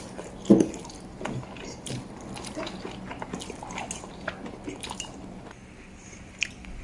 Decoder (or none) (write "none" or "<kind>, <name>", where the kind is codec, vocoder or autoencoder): none